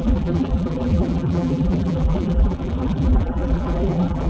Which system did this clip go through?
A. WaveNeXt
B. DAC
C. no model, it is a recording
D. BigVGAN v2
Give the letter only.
D